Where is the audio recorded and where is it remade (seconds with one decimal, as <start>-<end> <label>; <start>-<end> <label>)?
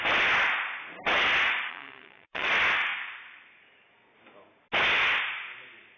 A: 0.0-1.7 recorded; 1.7-2.5 remade; 2.5-6.0 recorded